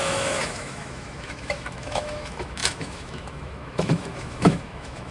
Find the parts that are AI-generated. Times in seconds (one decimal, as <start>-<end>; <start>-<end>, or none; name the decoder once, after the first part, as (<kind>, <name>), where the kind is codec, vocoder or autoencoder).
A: 0.0-5.1 (autoencoder, DAC-VAE)